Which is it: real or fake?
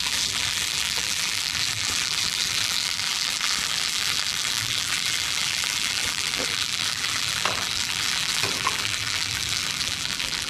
fake